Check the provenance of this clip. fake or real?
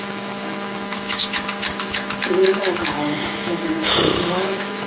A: fake